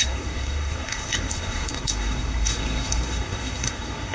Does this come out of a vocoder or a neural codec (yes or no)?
yes